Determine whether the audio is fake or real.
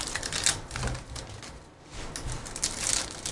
real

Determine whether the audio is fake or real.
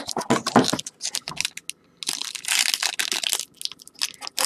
real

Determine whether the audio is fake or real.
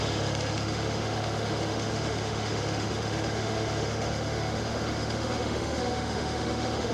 fake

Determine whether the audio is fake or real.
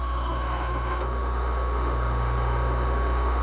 fake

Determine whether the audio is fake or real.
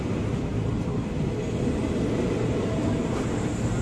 real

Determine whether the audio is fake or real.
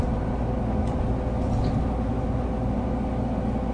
real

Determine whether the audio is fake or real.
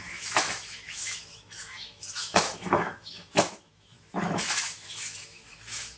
fake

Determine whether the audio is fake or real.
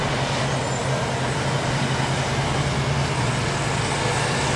real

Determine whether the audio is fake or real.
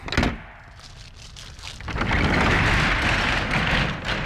real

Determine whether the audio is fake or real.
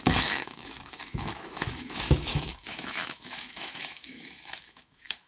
fake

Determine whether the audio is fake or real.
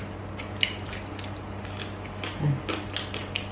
real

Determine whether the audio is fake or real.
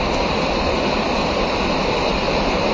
real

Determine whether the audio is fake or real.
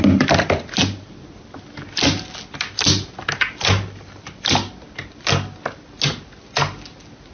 real